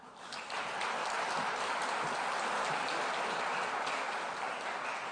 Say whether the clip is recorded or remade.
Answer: recorded